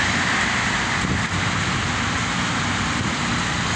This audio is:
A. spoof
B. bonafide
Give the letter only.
B